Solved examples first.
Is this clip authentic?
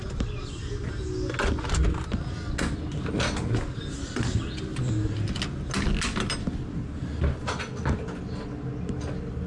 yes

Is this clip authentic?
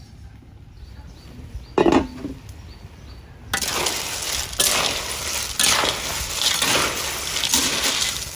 yes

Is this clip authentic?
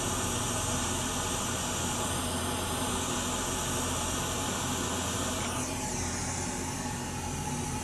yes